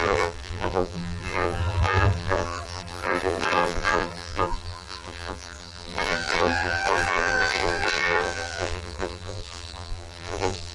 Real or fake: fake